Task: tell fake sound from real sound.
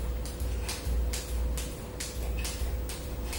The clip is real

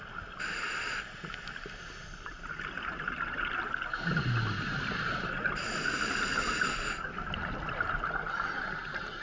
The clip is real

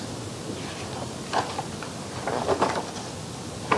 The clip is real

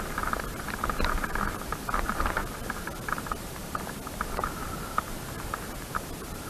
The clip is real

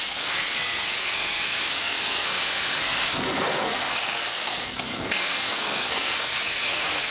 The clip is fake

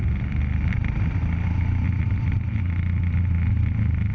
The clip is real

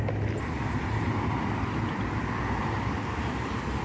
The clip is real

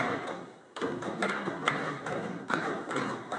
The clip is fake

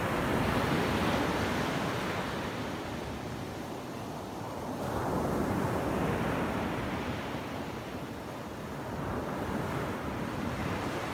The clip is real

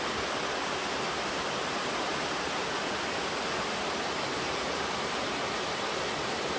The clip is real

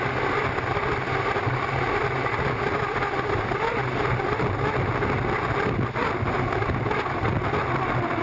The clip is real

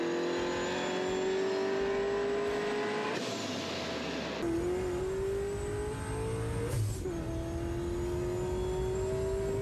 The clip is real